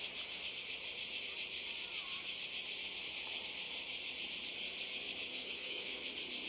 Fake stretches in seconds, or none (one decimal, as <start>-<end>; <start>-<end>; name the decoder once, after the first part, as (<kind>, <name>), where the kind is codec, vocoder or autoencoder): 5.3-6.1 (codec, SNAC)